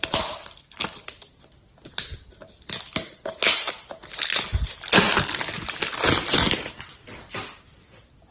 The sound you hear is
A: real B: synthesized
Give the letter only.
A